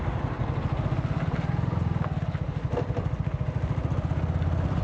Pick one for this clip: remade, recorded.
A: recorded